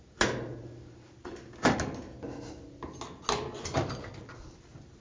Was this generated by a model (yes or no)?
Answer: no